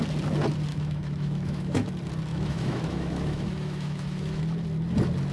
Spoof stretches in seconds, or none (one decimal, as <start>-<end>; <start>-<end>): 0.7-1.9; 2.3-4.4